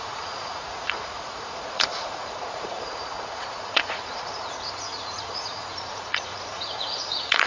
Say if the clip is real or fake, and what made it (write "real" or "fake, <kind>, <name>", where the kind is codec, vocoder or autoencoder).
fake, vocoder, Vocos